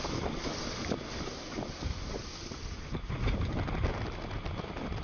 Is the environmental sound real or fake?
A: real